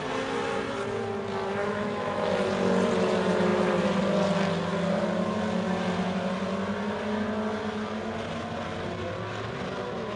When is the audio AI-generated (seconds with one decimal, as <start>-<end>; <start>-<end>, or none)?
1.6-2.3